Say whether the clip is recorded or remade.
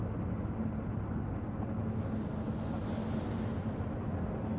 recorded